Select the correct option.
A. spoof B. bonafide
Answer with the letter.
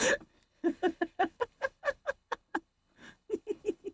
A